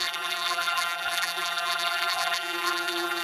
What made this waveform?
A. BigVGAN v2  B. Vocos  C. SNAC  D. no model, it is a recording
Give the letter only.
A